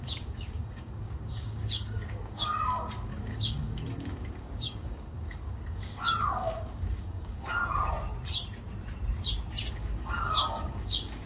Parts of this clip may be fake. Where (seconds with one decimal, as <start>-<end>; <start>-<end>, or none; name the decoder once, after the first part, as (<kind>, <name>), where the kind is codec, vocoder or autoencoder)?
0.0-7.6 (codec, DAC); 9.7-11.3